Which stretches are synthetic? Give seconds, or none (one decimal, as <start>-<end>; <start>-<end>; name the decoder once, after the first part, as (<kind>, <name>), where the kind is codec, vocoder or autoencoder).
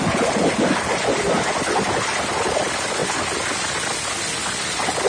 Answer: none